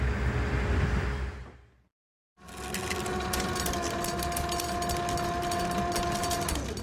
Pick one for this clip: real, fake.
real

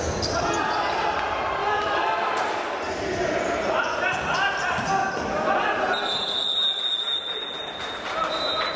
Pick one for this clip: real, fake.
real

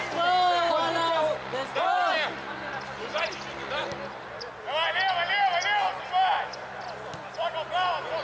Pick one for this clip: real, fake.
real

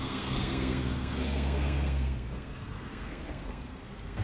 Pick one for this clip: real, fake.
fake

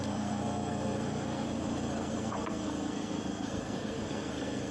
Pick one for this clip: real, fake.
fake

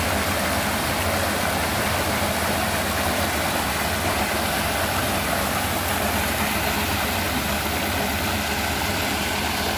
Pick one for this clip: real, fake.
real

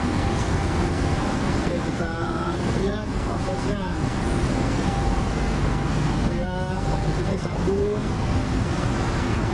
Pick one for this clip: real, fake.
fake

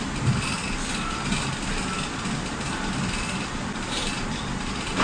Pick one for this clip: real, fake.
real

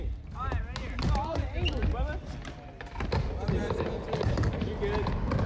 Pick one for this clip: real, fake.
real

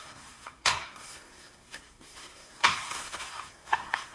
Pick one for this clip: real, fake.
fake